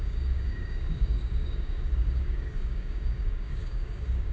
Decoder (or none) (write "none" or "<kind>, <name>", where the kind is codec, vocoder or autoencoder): codec, DAC